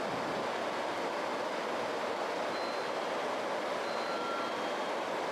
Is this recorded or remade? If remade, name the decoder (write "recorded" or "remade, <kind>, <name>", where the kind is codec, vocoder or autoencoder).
recorded